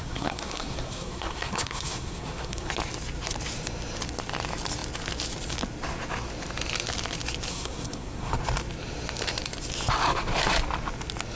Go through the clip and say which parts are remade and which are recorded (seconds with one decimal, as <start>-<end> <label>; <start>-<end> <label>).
0.0-2.7 remade; 2.7-7.5 recorded; 7.5-8.3 remade; 8.3-11.4 recorded